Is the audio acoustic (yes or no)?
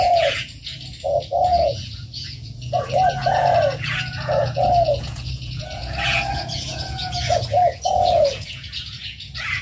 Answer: no